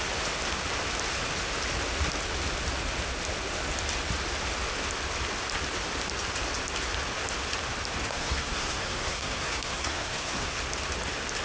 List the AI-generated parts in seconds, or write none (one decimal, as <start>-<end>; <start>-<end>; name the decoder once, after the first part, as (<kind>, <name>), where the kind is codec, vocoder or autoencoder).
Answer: 8.0-10.6 (codec, SNAC)